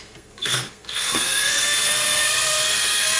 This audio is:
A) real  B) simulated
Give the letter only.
B